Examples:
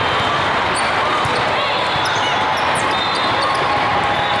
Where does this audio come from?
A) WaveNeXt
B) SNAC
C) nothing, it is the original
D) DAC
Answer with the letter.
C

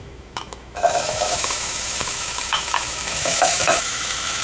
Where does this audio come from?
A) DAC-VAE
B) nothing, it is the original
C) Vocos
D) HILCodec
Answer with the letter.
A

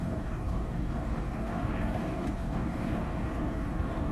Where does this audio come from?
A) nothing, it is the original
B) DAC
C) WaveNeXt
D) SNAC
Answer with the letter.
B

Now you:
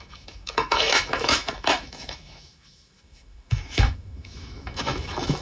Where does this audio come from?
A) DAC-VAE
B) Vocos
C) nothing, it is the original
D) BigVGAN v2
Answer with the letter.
A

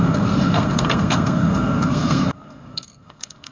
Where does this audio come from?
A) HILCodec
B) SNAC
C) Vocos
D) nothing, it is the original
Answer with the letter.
B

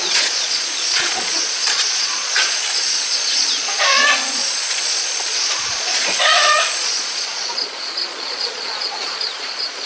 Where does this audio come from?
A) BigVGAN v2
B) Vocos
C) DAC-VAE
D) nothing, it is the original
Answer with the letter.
B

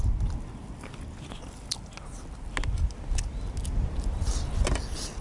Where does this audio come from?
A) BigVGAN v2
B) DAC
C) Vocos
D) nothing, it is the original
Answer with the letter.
D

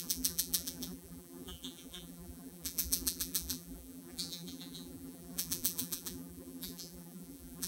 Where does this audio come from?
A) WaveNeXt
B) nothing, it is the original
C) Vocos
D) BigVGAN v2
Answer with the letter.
D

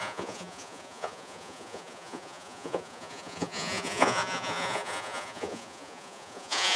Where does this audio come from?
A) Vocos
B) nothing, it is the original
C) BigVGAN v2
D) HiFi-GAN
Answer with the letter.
A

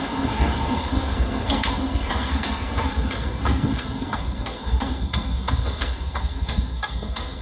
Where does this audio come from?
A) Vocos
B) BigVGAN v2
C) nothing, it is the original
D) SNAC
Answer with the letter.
D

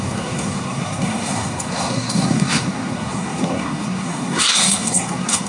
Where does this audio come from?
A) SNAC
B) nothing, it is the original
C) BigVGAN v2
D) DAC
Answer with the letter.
A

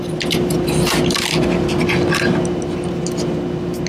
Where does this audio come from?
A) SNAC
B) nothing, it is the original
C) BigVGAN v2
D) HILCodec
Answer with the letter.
B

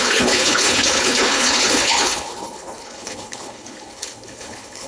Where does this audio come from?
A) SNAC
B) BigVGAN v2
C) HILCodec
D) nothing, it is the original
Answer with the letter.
C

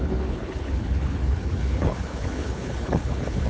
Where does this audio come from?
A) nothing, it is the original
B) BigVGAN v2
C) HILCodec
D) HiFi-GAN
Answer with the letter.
C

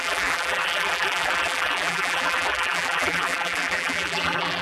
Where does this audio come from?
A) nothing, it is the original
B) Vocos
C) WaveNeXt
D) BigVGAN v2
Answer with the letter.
D